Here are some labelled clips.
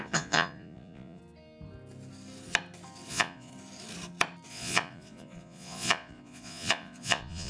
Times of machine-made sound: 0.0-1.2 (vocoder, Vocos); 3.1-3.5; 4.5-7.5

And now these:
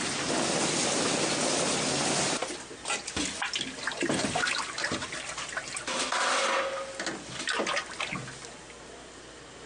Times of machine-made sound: none

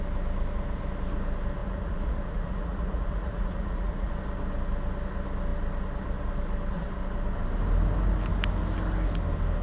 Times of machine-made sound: 1.6-4.1 (vocoder, Vocos)

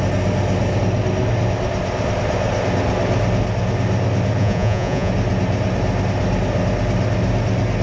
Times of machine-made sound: 4.4-5.1 (vocoder, Vocos)

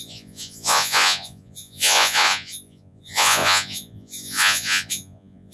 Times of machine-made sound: 0.0-5.5 (vocoder, Vocos)